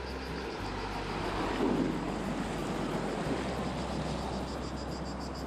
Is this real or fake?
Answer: real